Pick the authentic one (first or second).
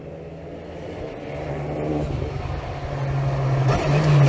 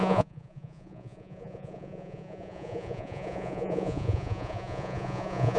first